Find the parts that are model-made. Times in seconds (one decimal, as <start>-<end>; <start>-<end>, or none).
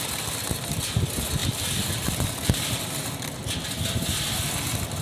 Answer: 1.4-2.8; 3.4-5.0